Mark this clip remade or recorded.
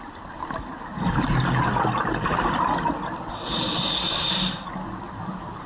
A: recorded